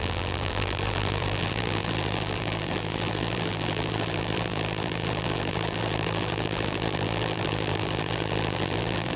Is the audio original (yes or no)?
no